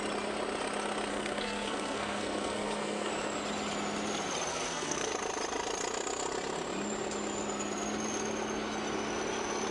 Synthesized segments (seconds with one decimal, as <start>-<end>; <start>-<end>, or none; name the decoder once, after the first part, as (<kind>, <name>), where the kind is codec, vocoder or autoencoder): 1.1-3.1 (codec, SNAC); 4.5-5.1